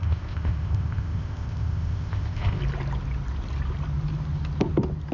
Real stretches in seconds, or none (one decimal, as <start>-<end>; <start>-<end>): 2.6-5.1